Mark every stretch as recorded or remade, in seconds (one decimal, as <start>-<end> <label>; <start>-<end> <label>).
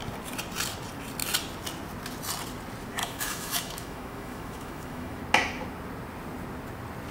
0.0-3.0 recorded; 3.0-5.2 remade; 5.2-7.1 recorded